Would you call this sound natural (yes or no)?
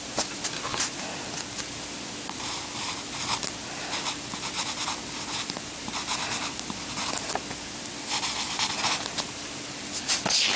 yes